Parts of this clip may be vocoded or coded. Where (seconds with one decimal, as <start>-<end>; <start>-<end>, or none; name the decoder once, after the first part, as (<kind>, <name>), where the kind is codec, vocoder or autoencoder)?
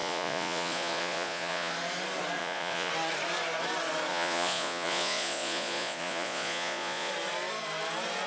0.0-1.7 (vocoder, Vocos); 2.4-2.9; 4.1-7.1